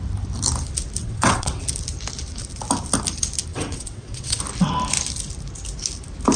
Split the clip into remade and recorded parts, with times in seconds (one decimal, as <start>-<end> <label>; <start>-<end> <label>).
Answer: 0.0-1.0 recorded; 1.0-1.6 remade; 1.6-3.5 recorded; 3.5-4.4 remade; 4.4-6.4 recorded